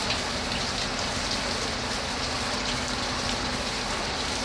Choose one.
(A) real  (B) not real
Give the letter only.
A